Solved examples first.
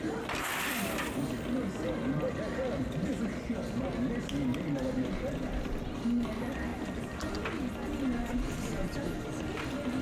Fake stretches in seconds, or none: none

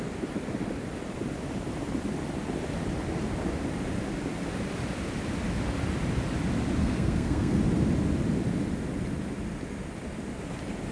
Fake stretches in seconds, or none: 6.8-7.6 (codec, SNAC)

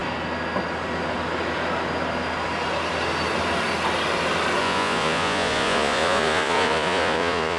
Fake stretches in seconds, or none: 4.6-7.6 (vocoder, Vocos)

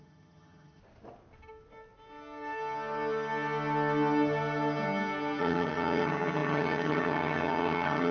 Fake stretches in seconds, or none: 0.0-0.8 (vocoder, HiFi-GAN); 5.4-8.1

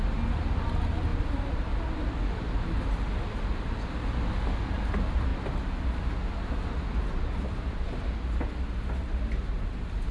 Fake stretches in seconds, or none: none